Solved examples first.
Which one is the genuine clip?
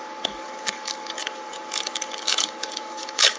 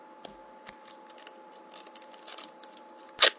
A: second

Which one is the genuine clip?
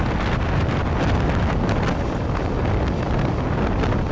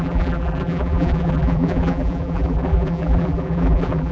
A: first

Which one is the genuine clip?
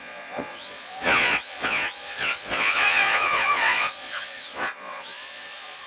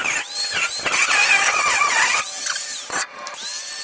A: second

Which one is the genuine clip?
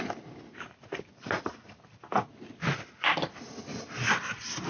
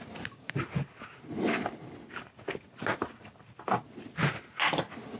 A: second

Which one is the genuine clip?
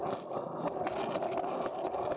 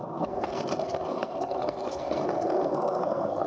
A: first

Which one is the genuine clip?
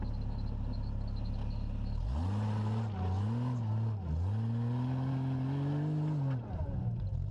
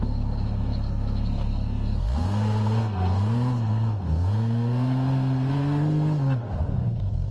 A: first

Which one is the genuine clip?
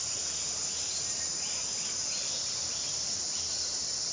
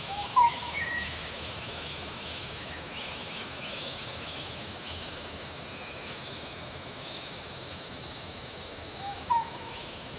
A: first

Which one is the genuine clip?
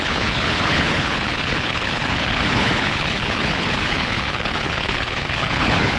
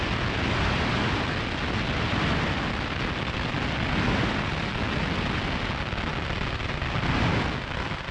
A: second